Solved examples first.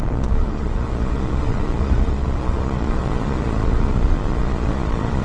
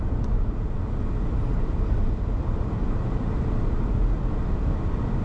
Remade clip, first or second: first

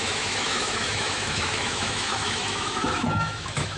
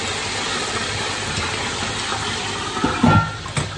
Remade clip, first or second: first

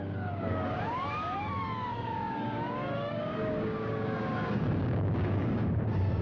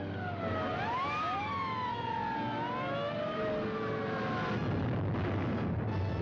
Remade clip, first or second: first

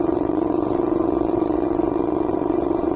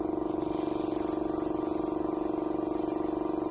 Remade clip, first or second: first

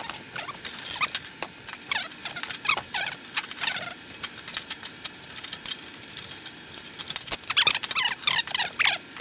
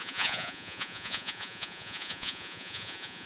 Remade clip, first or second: second